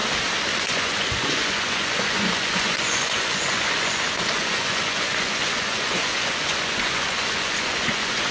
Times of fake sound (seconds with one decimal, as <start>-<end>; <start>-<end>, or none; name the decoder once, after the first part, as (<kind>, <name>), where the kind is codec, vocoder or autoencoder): 0.6-8.3 (vocoder, Vocos)